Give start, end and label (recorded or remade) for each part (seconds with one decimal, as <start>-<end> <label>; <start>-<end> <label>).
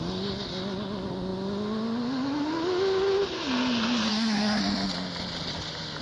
0.0-4.1 recorded; 4.1-4.6 remade; 4.6-6.0 recorded